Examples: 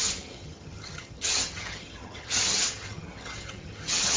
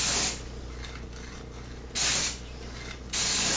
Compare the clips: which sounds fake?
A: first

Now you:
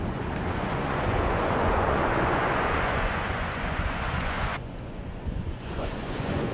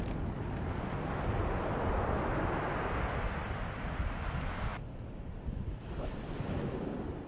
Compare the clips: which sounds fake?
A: first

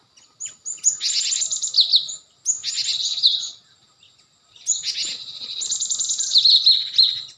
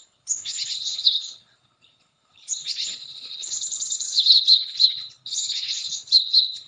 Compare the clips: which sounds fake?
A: second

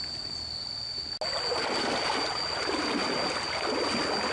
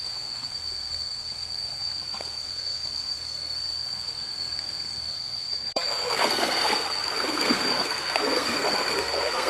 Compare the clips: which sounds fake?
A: second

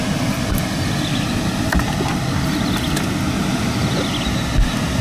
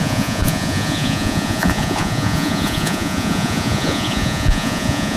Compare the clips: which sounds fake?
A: second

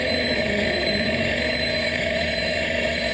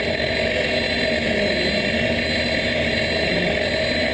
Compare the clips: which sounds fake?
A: first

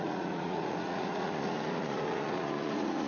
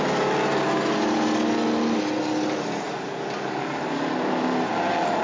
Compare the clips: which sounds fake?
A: first